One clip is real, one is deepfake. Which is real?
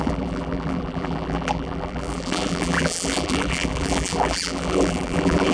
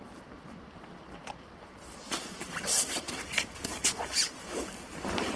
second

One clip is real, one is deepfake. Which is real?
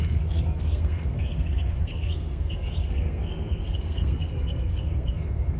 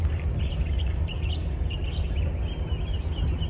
second